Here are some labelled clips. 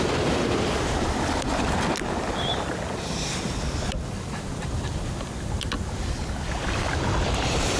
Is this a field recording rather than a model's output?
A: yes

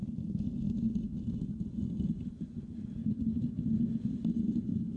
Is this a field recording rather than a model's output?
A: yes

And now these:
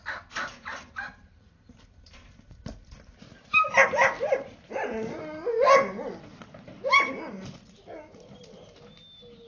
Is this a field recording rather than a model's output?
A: yes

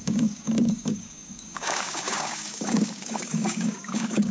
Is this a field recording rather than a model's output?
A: no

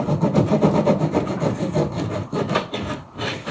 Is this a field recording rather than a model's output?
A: yes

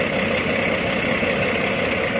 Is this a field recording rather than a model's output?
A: yes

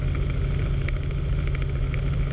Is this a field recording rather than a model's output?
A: yes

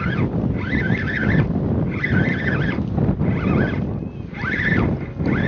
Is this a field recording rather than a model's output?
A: yes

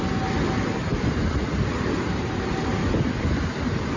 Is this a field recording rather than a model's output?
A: yes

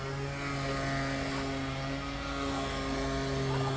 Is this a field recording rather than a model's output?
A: yes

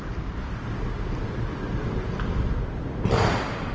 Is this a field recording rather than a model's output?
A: yes